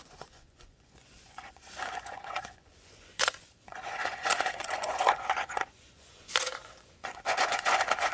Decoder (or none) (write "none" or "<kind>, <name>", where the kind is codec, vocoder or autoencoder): vocoder, Vocos